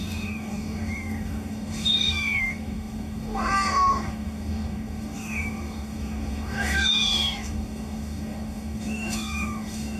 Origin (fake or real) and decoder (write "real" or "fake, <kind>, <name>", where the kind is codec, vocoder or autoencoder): fake, codec, DAC